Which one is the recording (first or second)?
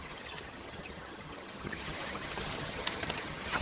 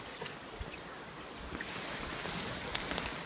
second